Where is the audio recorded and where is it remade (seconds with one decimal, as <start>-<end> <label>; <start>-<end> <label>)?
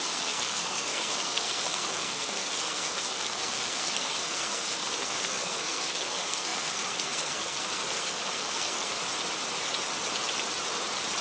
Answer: 0.0-9.0 remade; 9.0-11.2 recorded